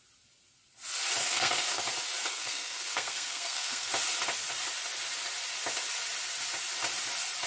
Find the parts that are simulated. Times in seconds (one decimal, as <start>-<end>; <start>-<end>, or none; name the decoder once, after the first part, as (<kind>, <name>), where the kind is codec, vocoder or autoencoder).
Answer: 1.2-1.8 (codec, SNAC); 2.3-3.9